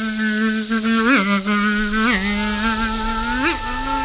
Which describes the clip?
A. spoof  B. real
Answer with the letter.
B